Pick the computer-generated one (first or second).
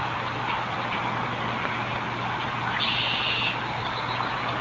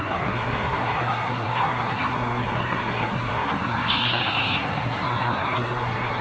second